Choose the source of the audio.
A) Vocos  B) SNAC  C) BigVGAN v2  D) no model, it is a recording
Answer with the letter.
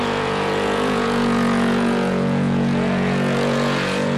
A